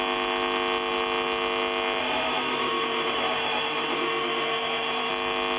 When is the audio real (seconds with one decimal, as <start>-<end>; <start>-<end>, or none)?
0.0-2.0; 5.1-5.6